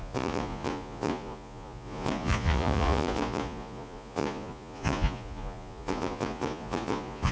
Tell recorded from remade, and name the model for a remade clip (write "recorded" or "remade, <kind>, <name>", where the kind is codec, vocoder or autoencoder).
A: remade, vocoder, Vocos